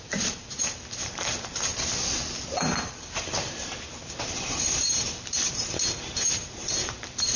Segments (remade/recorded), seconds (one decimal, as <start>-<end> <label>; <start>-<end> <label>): 0.0-1.7 remade; 1.7-2.9 recorded; 2.9-7.4 remade

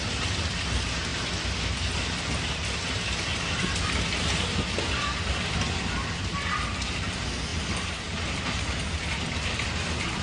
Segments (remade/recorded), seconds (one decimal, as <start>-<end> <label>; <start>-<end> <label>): 0.0-10.2 recorded

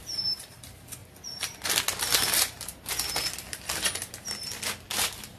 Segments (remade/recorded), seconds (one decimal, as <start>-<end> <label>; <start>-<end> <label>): 0.0-0.5 remade; 0.5-5.4 recorded